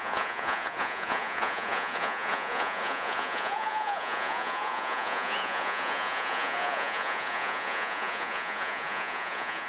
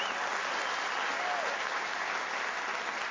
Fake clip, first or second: first